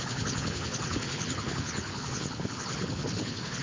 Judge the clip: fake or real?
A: fake